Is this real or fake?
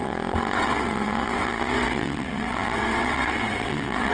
fake